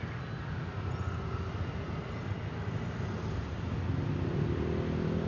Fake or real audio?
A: real